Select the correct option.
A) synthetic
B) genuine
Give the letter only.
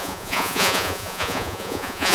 A